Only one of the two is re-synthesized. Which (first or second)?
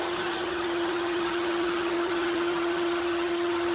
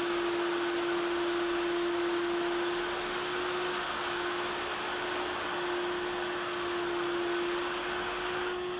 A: first